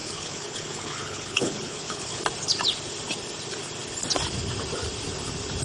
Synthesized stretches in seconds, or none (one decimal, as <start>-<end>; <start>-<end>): 0.0-2.2